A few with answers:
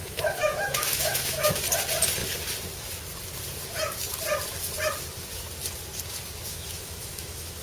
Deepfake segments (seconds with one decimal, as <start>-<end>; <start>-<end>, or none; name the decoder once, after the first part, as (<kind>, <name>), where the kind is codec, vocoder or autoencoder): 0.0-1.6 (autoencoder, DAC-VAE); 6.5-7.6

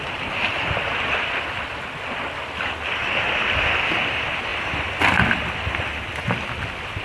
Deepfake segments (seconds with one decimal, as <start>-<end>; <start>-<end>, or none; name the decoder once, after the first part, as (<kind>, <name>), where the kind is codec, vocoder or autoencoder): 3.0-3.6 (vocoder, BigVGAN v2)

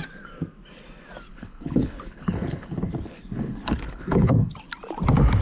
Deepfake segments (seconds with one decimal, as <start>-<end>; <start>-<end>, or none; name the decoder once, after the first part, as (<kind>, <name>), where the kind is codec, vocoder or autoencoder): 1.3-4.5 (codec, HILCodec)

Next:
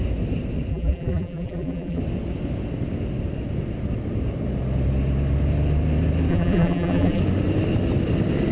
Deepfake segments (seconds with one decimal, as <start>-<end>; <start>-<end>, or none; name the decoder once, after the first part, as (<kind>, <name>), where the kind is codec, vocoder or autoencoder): 0.7-2.0 (vocoder, BigVGAN v2); 6.3-7.2